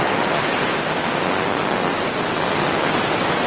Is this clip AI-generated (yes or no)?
no